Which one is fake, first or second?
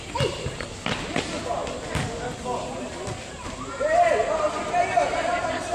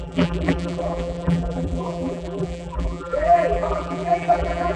second